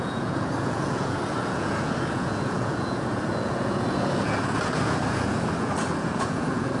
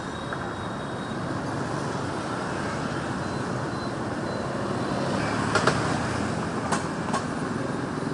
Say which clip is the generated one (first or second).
first